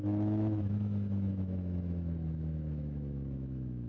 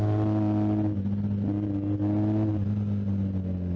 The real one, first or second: second